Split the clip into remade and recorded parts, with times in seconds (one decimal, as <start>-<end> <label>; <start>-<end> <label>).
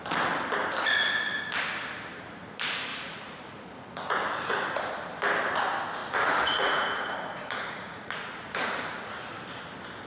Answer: 0.0-2.9 recorded; 2.9-4.9 remade; 4.9-6.0 recorded; 6.0-9.2 remade; 9.2-10.1 recorded